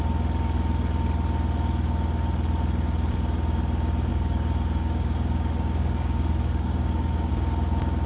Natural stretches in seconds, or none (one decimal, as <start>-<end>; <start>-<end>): 0.0-4.1; 7.3-8.1